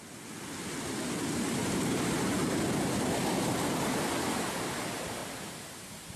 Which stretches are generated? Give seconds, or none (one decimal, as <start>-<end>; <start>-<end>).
1.6-2.6; 5.2-6.2